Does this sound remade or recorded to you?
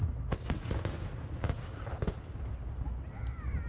recorded